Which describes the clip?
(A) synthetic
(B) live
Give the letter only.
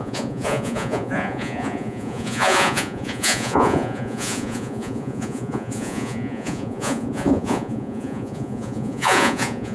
A